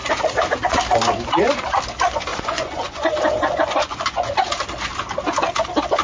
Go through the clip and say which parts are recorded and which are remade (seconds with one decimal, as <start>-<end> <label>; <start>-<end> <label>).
0.0-2.3 recorded; 2.3-4.3 remade; 4.3-6.0 recorded